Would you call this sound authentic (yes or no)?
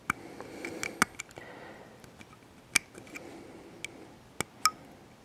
yes